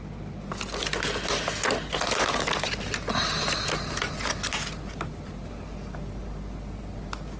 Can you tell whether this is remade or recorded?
recorded